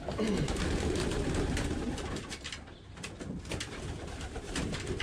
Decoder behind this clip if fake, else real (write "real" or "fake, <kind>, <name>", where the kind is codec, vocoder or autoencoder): real